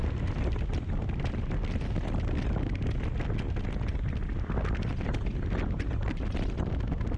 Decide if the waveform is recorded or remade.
recorded